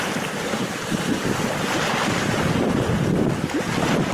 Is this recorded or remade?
recorded